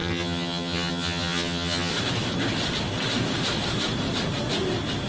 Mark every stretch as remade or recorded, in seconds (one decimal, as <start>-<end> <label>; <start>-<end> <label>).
0.0-1.9 remade; 1.9-5.1 recorded